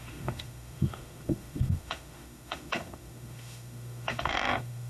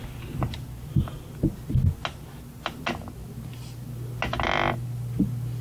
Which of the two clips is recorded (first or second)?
second